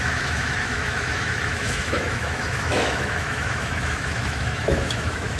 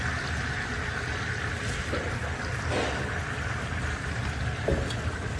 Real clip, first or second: second